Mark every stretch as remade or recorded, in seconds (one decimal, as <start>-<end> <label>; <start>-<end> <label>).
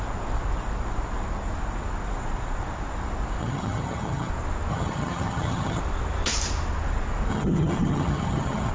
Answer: 0.0-3.4 recorded; 3.4-4.3 remade; 4.3-4.7 recorded; 4.7-5.8 remade; 5.8-7.3 recorded; 7.3-8.7 remade